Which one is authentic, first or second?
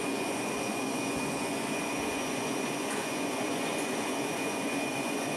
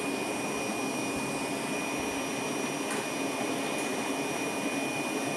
second